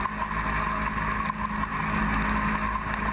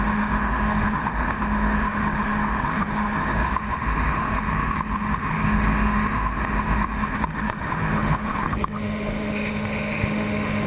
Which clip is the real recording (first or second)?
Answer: first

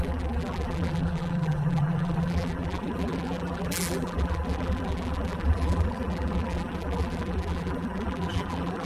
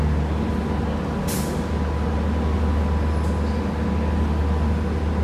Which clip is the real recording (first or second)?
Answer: second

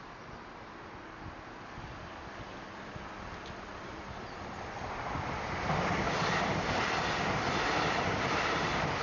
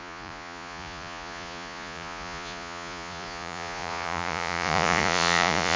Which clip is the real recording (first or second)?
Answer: first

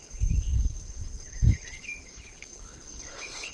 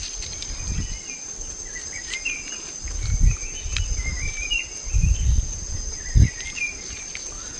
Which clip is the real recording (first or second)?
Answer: second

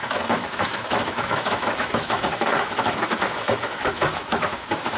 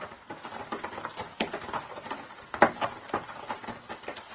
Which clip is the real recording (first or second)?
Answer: second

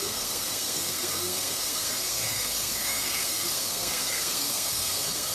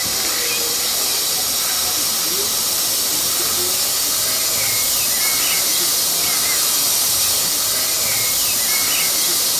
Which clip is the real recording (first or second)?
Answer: second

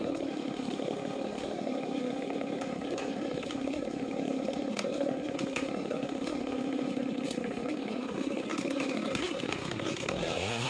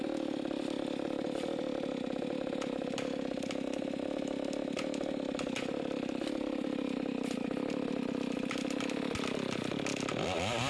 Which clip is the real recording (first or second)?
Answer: second